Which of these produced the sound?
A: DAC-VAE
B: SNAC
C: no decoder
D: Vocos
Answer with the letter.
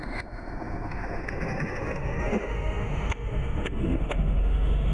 A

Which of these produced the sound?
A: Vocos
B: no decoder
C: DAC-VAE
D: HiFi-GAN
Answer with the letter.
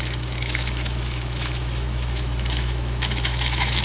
C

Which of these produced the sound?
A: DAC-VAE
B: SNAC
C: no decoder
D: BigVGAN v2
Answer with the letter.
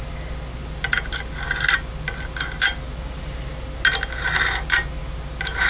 C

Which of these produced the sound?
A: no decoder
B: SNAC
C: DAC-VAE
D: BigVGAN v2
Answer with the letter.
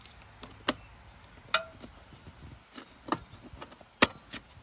A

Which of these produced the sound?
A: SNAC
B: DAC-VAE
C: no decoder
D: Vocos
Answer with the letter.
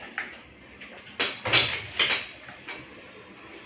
C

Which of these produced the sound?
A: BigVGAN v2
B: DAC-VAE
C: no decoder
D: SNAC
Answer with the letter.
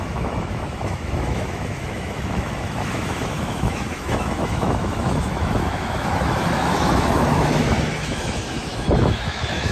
B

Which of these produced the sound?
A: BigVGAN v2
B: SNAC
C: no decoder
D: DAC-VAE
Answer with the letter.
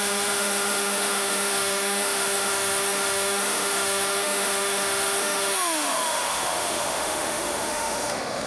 D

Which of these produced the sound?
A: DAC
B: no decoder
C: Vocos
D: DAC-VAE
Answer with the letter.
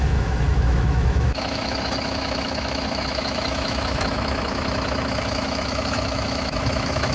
D